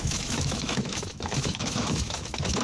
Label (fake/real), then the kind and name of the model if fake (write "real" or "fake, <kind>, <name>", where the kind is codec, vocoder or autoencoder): fake, autoencoder, DAC-VAE